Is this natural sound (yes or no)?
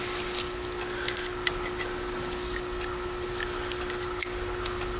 yes